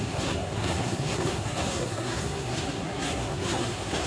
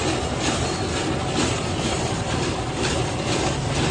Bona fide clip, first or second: second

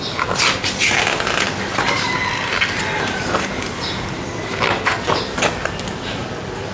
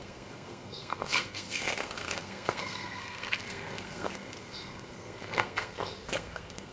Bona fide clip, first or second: first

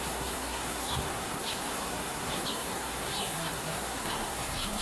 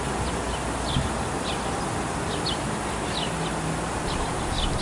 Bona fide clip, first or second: second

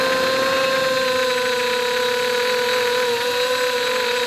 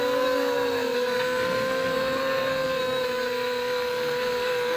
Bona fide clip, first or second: first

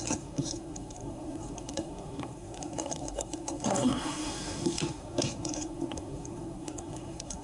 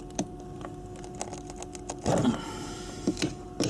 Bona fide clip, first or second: second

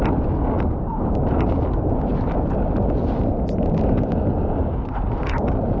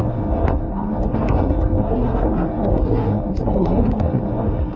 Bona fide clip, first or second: first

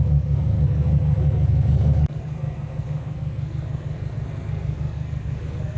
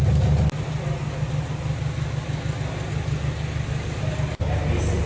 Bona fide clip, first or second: second